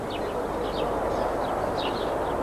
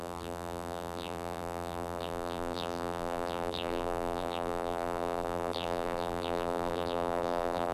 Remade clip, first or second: second